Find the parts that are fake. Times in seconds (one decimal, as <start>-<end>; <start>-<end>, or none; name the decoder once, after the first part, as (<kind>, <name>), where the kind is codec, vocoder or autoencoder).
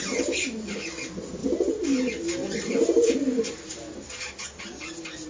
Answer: none